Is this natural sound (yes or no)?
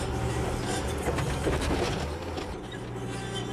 yes